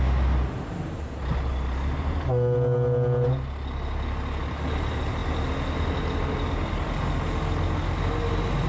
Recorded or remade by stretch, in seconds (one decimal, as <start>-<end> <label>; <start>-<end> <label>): 0.0-8.7 recorded